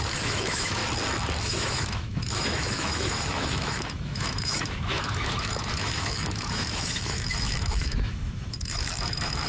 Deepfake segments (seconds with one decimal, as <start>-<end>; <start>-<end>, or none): 0.0-0.8; 1.4-9.5